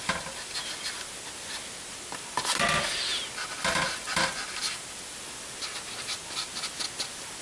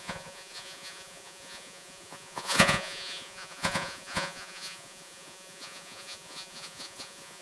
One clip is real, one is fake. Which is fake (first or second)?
second